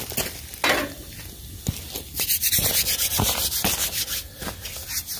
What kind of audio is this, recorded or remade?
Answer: recorded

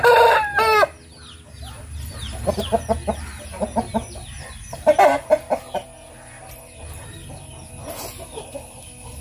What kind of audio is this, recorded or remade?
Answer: recorded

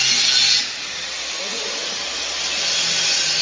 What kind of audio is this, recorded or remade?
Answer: recorded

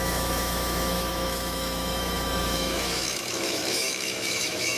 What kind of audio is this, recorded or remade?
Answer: remade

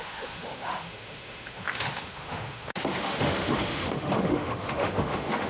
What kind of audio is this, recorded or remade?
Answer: remade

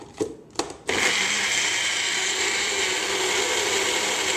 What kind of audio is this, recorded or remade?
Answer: recorded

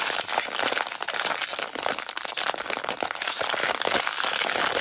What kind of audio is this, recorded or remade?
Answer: recorded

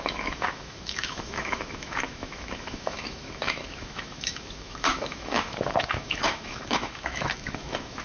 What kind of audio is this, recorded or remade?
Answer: remade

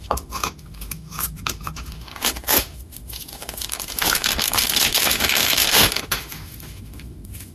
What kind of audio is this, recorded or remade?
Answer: remade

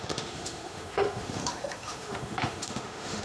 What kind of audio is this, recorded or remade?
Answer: remade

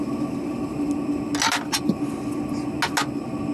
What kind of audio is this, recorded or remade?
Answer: recorded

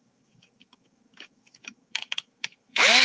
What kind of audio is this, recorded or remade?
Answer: remade